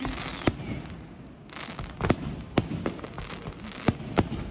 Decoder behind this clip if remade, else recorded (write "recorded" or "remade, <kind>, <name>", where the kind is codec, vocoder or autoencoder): recorded